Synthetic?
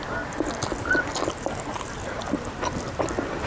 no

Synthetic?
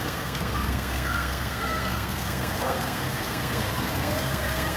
yes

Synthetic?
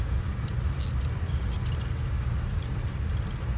no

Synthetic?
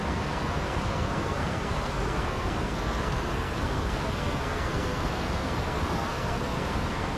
yes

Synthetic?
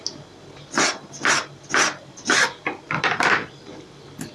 no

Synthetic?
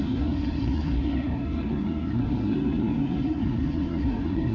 yes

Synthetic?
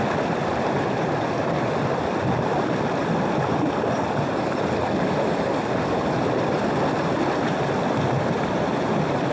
no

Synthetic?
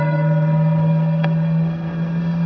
yes